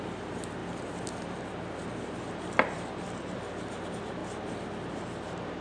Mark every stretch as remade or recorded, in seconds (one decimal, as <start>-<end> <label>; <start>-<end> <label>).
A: 0.0-0.6 recorded; 0.6-3.4 remade; 3.4-5.6 recorded